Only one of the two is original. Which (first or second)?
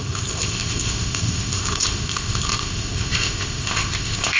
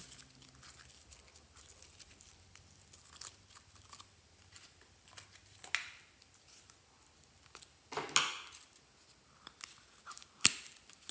second